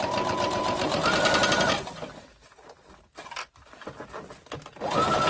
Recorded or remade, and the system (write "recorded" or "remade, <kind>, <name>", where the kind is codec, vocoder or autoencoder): recorded